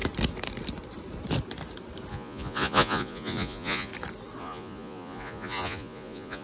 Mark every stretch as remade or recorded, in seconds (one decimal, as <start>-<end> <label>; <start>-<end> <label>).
0.0-2.1 recorded; 2.1-3.9 remade; 3.9-4.4 recorded; 4.4-6.4 remade